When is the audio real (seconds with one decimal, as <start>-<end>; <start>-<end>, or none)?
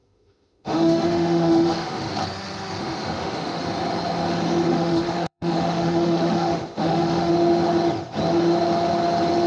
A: 2.1-2.8; 3.6-4.7; 7.3-9.5